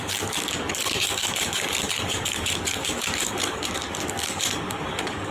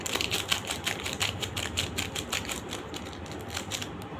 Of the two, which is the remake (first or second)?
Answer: first